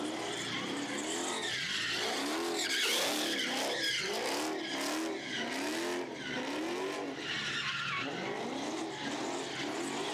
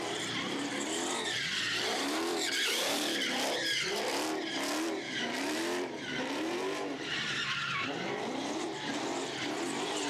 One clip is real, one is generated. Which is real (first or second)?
first